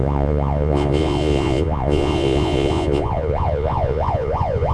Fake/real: fake